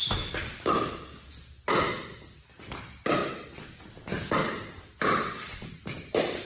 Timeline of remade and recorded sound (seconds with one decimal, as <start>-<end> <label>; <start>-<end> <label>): 0.0-1.9 recorded; 1.9-2.7 remade; 2.7-4.4 recorded; 4.4-5.0 remade; 5.0-5.5 recorded; 5.5-6.5 remade